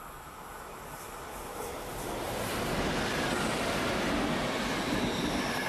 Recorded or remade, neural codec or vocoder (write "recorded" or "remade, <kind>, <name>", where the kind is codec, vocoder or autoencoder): recorded